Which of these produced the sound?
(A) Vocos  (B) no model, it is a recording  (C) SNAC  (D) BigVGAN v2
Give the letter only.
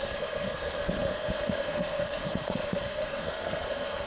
C